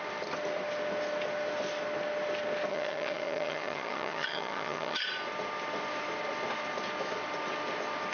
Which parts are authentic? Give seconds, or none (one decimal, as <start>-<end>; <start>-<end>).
0.0-2.7; 5.0-8.1